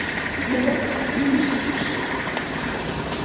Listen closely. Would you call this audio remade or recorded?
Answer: remade